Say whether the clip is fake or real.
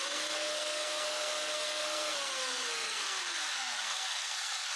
fake